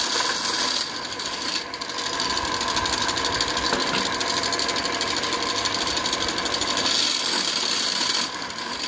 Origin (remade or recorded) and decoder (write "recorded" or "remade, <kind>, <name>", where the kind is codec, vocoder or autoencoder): recorded